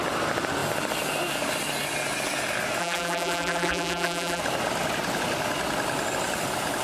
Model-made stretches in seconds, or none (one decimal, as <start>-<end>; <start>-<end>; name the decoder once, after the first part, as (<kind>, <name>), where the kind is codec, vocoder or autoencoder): 2.8-4.4 (vocoder, BigVGAN v2)